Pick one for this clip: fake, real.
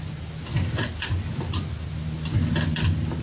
real